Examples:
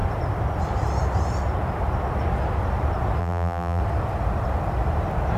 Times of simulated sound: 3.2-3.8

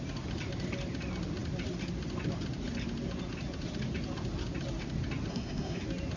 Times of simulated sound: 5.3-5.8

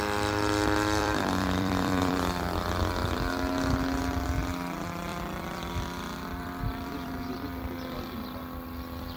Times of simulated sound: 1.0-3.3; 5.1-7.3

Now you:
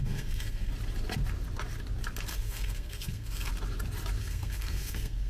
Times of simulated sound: 0.0-0.7; 2.3-3.5; 4.2-5.3

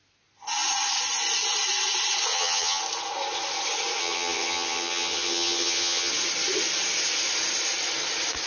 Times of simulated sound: 2.3-2.8; 4.0-6.1